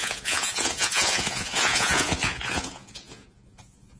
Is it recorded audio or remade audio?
remade